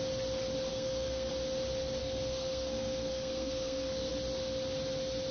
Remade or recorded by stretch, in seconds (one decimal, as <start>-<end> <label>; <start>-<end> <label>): 0.0-0.7 recorded; 0.7-1.3 remade; 1.3-2.0 recorded; 2.0-4.1 remade; 4.1-5.3 recorded